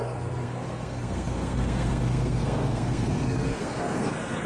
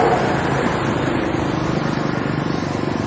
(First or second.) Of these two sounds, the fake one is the first